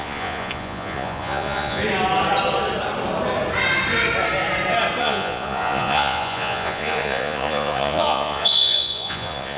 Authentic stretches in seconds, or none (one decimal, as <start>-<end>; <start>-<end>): 1.8-5.0